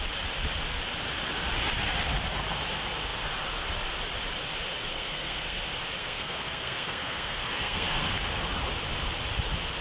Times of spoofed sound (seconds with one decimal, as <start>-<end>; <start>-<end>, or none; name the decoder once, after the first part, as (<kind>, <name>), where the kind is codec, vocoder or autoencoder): 4.9-5.6 (codec, SNAC); 6.0-8.1